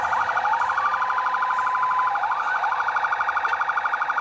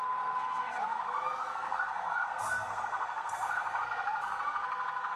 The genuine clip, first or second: first